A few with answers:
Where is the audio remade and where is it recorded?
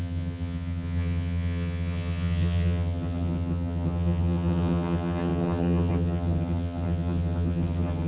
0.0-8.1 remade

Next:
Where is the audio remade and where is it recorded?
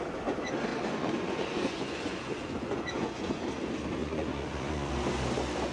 0.0-0.7 recorded; 0.7-3.5 remade; 3.5-4.0 recorded; 4.0-4.9 remade; 4.9-5.7 recorded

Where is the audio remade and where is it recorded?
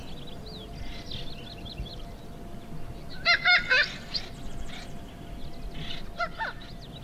0.0-7.0 recorded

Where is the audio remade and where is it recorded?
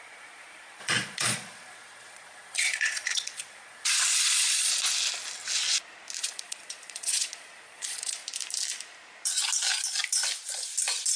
0.0-4.7 remade; 4.7-6.2 recorded; 6.2-8.2 remade; 8.2-11.2 recorded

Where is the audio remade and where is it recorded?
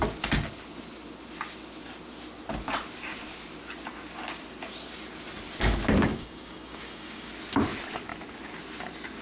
0.0-6.1 recorded; 6.1-7.3 remade; 7.3-9.2 recorded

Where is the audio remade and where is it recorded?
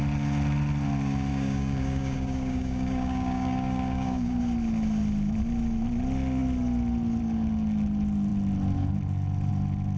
0.0-1.3 recorded; 1.3-4.4 remade; 4.4-10.0 recorded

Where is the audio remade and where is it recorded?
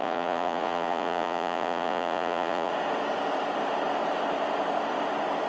0.0-2.7 remade; 2.7-5.5 recorded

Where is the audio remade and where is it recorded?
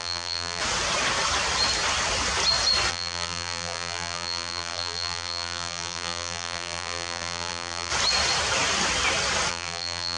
0.0-0.6 remade; 0.6-2.9 recorded; 2.9-7.9 remade; 7.9-9.5 recorded; 9.5-10.2 remade